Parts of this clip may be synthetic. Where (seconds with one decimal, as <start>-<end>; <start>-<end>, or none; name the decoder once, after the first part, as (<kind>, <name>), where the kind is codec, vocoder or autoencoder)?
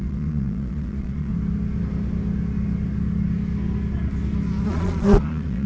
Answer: 0.0-1.3 (vocoder, Vocos); 4.7-5.7